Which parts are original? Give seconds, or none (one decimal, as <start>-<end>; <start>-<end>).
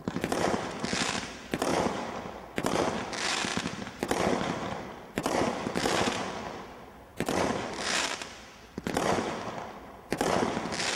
0.0-7.1; 8.9-11.0